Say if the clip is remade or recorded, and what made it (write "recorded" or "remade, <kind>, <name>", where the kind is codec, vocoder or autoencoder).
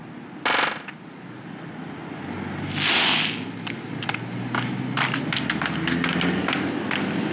recorded